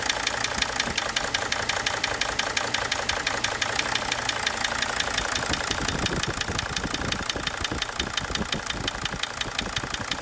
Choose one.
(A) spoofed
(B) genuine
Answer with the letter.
B